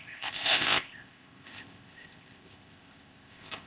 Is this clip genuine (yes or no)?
no